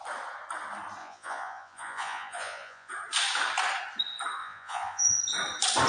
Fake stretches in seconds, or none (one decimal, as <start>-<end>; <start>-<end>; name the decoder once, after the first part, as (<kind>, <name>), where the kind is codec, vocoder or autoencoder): 1.0-2.9 (vocoder, Vocos); 4.4-5.2